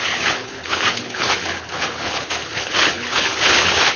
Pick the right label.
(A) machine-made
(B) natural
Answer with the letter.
A